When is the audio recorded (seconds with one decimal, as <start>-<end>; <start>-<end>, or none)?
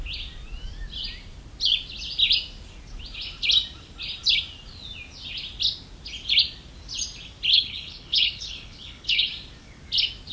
0.0-7.5; 9.3-10.3